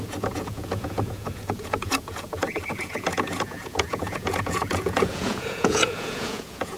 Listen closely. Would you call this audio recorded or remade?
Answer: remade